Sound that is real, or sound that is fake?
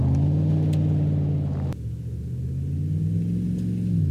real